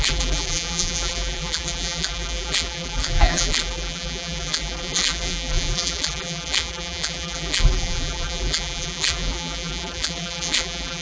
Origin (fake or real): fake